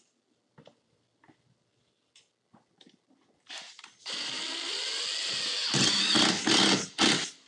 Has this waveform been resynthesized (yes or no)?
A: no